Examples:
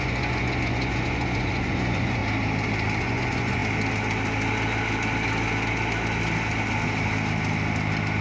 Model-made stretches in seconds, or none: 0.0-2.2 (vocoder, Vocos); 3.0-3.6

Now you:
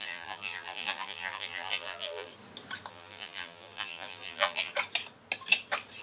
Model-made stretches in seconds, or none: 0.0-2.3 (vocoder, BigVGAN v2); 2.9-4.7

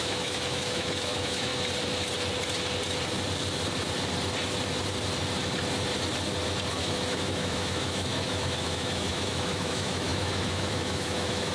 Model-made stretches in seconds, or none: 0.0-1.5 (autoencoder, DAC-VAE); 6.7-11.5

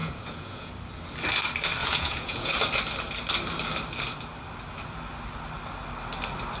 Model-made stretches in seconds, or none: 0.0-0.7 (vocoder, Vocos); 1.8-2.5

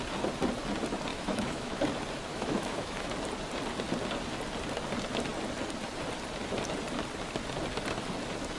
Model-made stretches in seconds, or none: 1.1-1.8 (autoencoder, DAC-VAE); 2.3-3.1

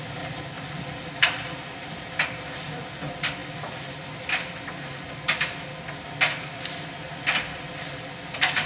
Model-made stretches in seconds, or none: none

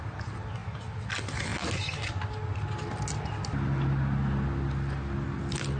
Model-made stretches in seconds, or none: none